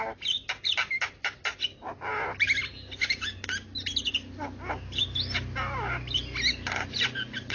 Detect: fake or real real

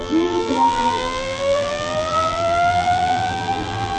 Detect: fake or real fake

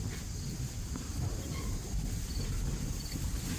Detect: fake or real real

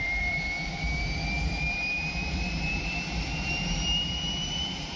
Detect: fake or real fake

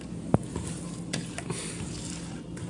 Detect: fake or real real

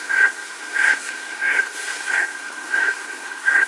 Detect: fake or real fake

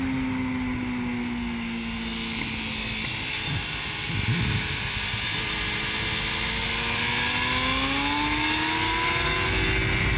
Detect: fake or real real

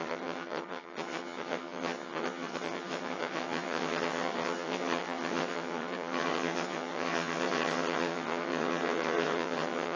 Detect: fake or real fake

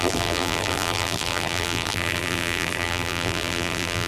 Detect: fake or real fake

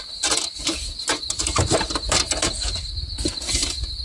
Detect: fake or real real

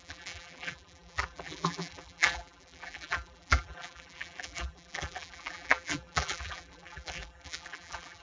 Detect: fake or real fake